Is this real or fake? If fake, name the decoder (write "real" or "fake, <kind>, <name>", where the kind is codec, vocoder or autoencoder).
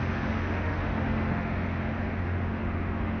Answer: fake, autoencoder, DAC-VAE